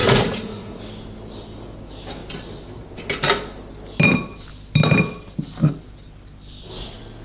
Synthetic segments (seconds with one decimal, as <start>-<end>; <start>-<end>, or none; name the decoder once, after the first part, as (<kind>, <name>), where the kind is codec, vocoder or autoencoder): 0.0-0.8 (vocoder, Vocos)